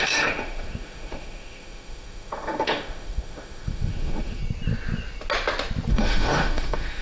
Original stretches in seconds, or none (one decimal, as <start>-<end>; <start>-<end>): 4.4-5.9